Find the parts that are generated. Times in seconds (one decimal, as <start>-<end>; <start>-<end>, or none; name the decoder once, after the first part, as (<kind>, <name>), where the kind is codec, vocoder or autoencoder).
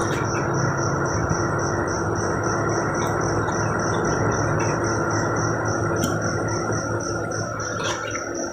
none